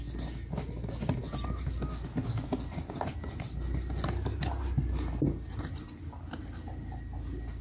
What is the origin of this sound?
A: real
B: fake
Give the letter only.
A